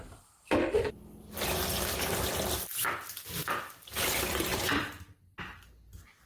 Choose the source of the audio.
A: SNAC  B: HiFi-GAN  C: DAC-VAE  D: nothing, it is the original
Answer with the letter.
D